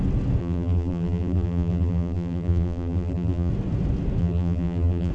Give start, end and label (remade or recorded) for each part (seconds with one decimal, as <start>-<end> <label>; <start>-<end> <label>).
0.0-0.4 recorded; 0.4-3.5 remade; 3.5-4.2 recorded; 4.2-5.1 remade